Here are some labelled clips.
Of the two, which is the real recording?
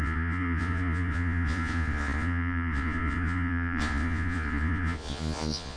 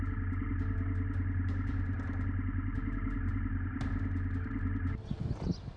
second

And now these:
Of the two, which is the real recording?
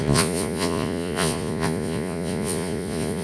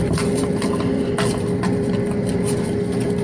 second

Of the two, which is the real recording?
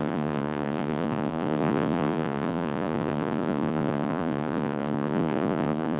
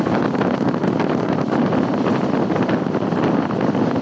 second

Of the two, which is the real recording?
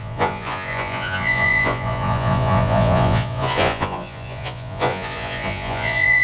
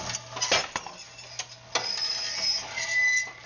second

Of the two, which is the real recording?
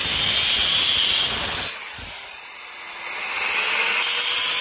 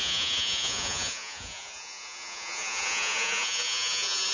first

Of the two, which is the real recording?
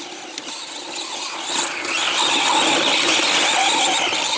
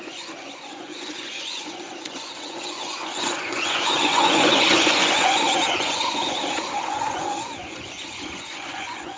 first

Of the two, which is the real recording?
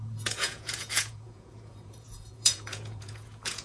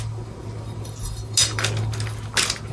second